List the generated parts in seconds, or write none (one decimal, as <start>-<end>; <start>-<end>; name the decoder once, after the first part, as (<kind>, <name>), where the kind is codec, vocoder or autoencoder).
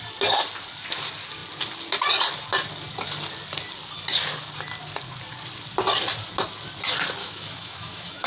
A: 7.2-8.3 (autoencoder, DAC-VAE)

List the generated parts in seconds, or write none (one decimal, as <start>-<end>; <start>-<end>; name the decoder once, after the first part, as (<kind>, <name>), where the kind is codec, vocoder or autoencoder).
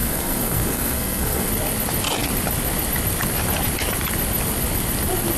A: 0.0-1.5 (codec, SNAC)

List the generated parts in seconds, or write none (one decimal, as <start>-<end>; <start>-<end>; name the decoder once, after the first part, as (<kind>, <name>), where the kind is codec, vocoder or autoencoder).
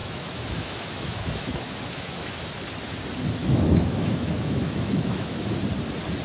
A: 0.0-2.3 (autoencoder, DAC-VAE); 3.4-5.4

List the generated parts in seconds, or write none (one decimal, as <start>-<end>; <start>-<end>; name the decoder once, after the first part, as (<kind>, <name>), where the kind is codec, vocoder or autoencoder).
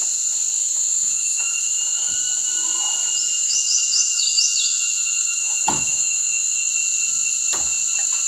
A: 0.6-2.1 (autoencoder, DAC-VAE); 3.4-6.7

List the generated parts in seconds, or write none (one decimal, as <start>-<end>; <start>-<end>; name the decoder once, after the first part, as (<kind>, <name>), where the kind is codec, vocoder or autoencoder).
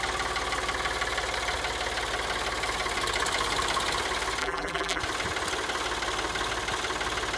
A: 4.4-5.0 (vocoder, BigVGAN v2)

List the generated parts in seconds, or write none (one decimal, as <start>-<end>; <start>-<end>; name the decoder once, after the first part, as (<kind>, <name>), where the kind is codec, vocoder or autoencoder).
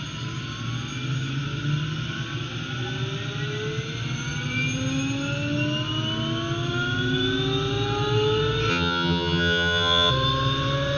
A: 8.7-10.1 (vocoder, HiFi-GAN)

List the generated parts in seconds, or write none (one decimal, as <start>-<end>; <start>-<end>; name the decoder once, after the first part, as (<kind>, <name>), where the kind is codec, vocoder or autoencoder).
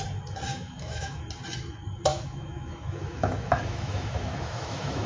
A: 0.5-1.2 (autoencoder, DAC-VAE); 2.1-5.1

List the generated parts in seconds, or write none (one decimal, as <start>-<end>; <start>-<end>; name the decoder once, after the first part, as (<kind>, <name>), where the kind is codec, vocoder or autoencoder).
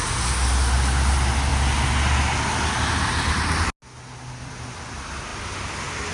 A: none